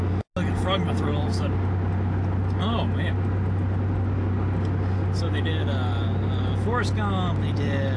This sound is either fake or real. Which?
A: real